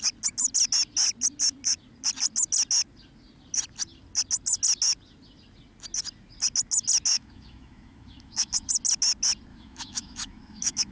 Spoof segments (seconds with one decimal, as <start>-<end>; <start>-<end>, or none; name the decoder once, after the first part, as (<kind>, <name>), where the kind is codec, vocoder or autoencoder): 7.1-8.7 (autoencoder, DAC-VAE); 9.5-10.9